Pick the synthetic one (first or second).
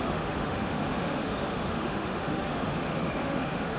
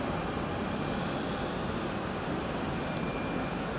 first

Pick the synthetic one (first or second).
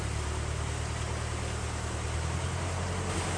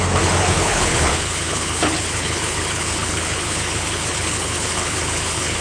second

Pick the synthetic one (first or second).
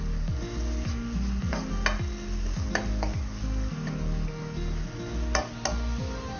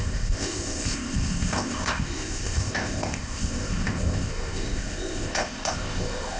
second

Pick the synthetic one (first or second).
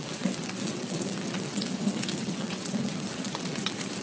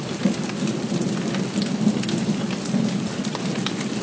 first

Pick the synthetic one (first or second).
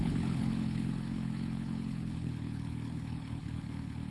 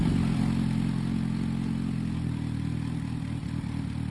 first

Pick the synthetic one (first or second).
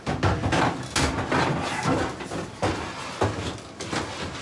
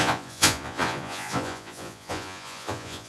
second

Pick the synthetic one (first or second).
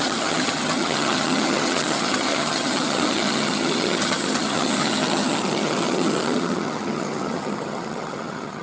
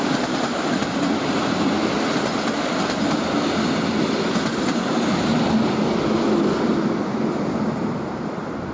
first